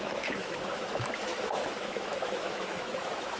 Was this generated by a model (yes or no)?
yes